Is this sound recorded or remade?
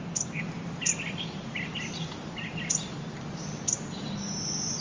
recorded